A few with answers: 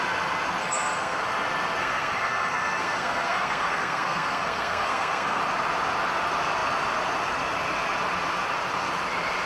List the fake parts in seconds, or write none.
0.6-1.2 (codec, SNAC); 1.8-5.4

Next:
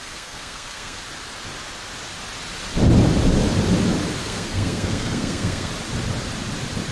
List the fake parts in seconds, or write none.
0.0-1.0 (codec, SNAC); 4.2-5.7

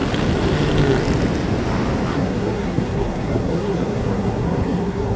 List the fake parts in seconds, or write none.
2.1-5.2 (codec, SNAC)

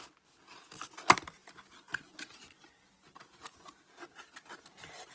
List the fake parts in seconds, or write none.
none

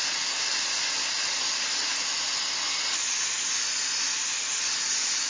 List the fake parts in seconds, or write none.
none